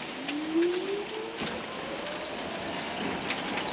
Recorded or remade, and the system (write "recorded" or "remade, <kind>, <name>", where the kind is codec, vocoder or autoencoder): recorded